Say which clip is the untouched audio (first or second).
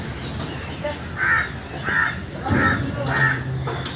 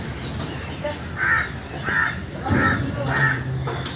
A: first